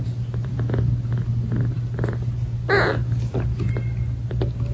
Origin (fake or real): real